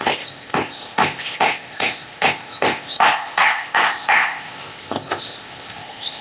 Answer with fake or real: fake